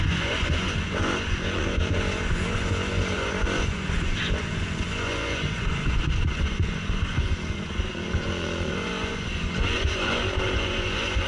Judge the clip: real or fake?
fake